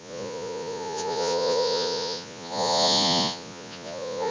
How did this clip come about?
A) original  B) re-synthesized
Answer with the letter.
B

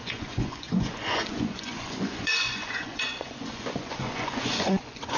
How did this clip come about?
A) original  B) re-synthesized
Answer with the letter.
B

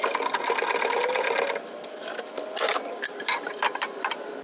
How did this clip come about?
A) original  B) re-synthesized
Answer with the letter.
A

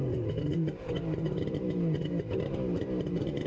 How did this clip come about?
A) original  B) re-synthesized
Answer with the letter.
A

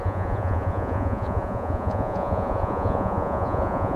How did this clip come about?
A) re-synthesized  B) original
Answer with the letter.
A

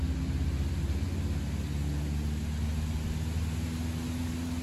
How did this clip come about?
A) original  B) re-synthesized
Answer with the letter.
A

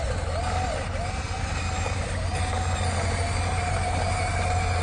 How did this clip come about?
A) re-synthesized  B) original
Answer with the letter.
B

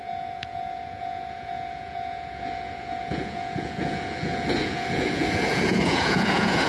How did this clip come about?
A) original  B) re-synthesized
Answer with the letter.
B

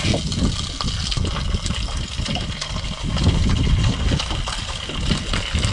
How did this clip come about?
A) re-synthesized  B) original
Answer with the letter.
B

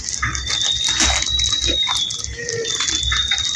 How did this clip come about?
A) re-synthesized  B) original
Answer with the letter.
B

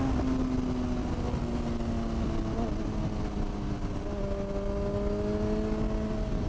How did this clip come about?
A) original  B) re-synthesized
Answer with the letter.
A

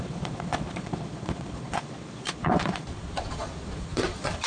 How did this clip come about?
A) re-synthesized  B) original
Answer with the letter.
A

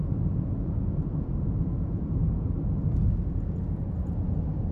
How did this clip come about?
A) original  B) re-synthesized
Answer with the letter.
B